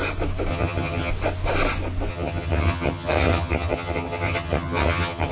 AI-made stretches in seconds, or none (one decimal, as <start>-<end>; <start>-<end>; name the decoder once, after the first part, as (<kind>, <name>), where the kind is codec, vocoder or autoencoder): 0.5-1.1 (vocoder, HiFi-GAN); 2.1-5.3